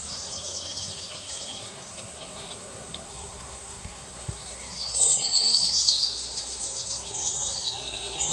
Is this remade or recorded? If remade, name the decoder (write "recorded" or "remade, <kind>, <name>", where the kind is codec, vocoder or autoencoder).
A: remade, codec, SNAC